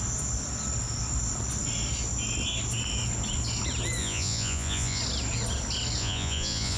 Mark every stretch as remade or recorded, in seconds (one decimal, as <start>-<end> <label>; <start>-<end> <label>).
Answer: 0.0-4.0 recorded; 4.0-5.0 remade; 5.0-6.0 recorded; 6.0-6.8 remade